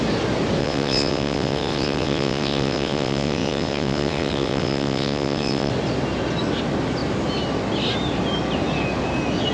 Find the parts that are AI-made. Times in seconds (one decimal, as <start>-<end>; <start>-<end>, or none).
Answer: 0.6-5.7